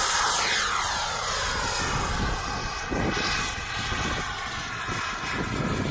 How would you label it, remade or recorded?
recorded